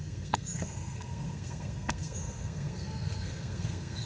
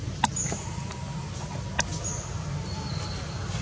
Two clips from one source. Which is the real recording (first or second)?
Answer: second